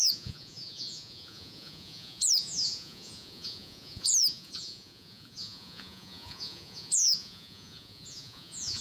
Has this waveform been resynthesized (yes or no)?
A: yes